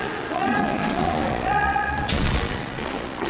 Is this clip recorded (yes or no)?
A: no